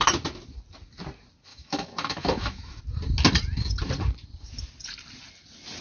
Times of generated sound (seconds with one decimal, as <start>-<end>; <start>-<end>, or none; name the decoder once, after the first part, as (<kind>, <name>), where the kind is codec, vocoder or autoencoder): 1.5-2.8 (autoencoder, DAC-VAE)